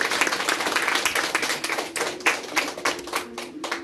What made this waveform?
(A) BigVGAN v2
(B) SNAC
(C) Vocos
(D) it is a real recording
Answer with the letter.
D